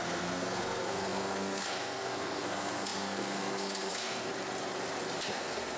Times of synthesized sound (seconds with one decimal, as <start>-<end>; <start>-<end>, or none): 0.0-4.3; 5.3-5.8